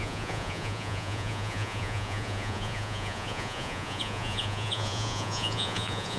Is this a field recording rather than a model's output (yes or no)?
no